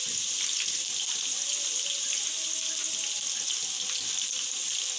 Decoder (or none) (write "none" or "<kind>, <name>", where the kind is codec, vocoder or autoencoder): none